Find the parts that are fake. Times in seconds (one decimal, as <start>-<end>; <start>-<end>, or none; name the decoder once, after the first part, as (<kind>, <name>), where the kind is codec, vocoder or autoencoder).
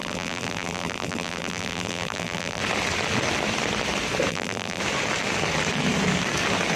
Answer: 0.0-2.6 (vocoder, BigVGAN v2); 4.3-4.8